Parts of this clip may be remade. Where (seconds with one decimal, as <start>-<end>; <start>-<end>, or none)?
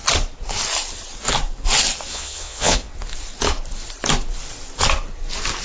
2.1-2.9